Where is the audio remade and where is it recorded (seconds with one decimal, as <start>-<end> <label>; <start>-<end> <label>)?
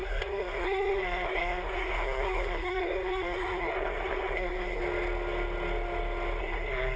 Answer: 0.0-4.8 remade; 4.8-6.4 recorded; 6.4-7.0 remade